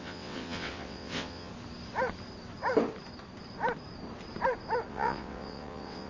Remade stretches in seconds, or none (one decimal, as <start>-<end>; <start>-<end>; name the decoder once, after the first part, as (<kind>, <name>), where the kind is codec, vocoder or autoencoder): 0.0-1.5 (vocoder, WaveNeXt); 4.9-6.1